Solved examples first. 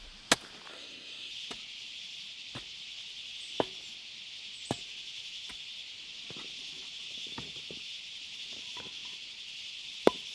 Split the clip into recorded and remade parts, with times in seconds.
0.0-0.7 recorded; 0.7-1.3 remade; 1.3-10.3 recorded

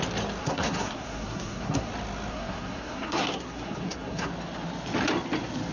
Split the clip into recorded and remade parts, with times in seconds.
0.0-0.4 recorded; 0.4-1.9 remade; 1.9-2.3 recorded; 2.3-4.3 remade; 4.3-5.7 recorded

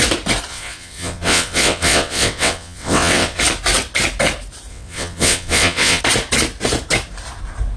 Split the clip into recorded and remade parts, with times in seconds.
0.0-0.5 recorded; 0.5-3.4 remade; 3.4-4.7 recorded; 4.7-6.0 remade; 6.0-7.8 recorded

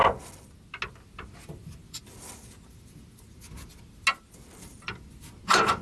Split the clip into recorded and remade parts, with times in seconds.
0.0-5.8 recorded